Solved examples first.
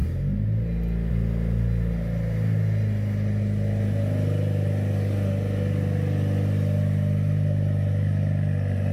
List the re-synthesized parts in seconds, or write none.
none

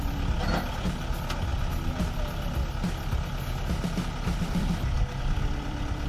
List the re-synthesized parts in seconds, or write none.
0.0-1.5 (vocoder, BigVGAN v2); 5.2-6.1

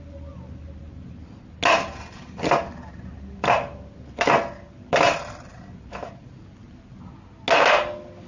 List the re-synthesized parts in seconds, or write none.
0.0-0.8 (vocoder, BigVGAN v2); 2.5-5.5